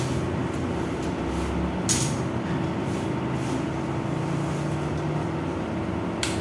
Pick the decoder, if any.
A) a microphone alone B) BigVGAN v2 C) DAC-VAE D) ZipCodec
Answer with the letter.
A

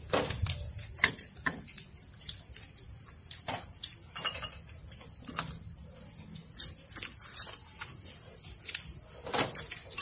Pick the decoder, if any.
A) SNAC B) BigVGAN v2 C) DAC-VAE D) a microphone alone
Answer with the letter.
D